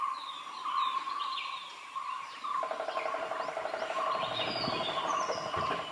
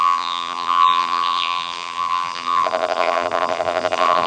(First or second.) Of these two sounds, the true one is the first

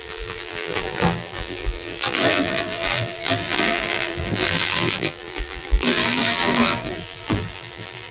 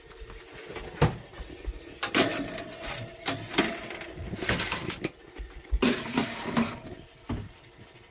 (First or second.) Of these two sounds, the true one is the second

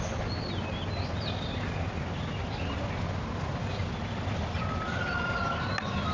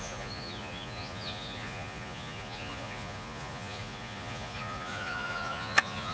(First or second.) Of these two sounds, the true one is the first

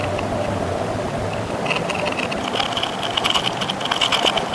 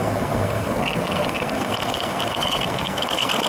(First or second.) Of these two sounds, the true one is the first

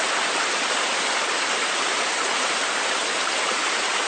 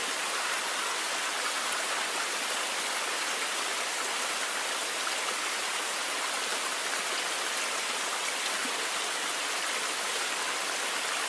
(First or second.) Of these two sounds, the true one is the second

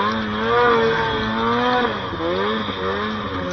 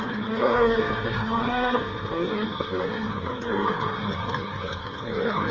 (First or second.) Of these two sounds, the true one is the first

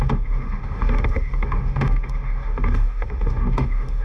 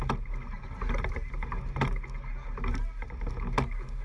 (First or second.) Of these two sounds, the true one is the second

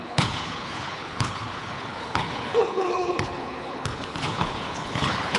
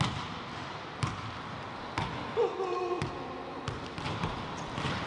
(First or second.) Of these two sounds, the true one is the second